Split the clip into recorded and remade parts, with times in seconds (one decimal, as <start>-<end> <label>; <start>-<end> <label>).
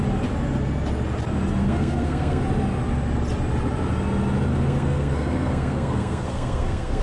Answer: 0.0-1.6 recorded; 1.6-2.4 remade; 2.4-4.5 recorded; 4.5-7.0 remade